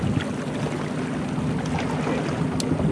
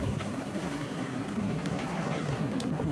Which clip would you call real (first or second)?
first